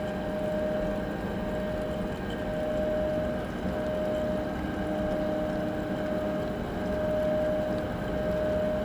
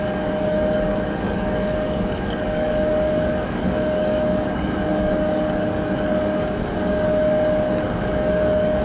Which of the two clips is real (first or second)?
first